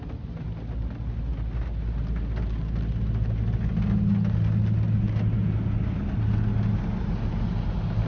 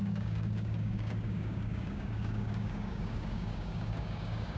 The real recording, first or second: first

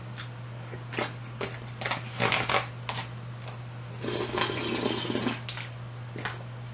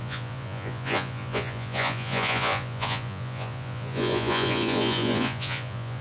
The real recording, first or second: first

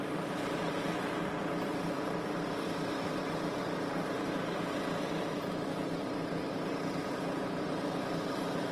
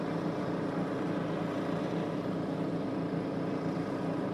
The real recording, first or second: second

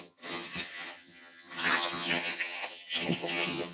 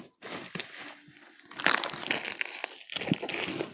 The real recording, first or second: second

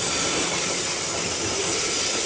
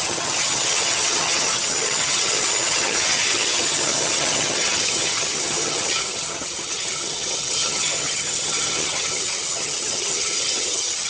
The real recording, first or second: first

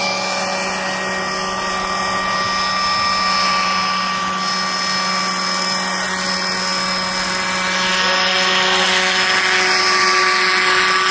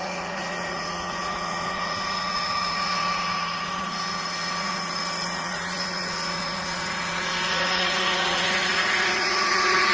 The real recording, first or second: first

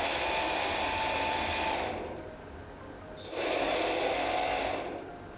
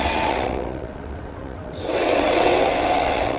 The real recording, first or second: first